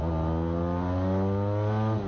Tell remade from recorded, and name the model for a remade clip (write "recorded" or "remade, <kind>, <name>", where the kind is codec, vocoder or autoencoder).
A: recorded